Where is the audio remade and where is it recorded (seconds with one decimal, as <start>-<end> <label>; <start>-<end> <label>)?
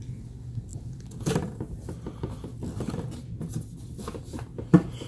0.0-5.1 recorded